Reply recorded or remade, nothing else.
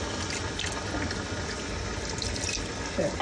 recorded